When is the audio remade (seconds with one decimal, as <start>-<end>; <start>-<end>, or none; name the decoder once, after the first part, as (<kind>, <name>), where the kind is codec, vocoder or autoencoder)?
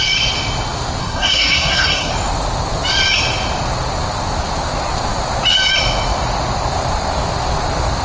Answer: 1.0-2.1 (codec, SNAC)